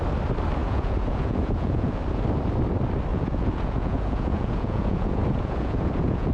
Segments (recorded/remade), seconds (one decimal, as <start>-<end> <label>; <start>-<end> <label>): 0.0-0.6 recorded; 0.6-2.0 remade; 2.0-3.1 recorded; 3.1-6.3 remade

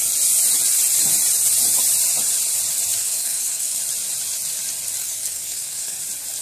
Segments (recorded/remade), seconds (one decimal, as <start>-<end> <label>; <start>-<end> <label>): 0.0-3.0 recorded; 3.0-3.8 remade; 3.8-5.0 recorded; 5.0-6.0 remade; 6.0-6.4 recorded

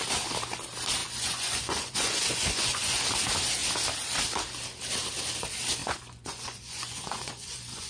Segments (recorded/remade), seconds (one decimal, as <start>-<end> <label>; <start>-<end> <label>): 0.0-1.0 recorded; 1.0-3.0 remade; 3.0-5.8 recorded; 5.8-7.9 remade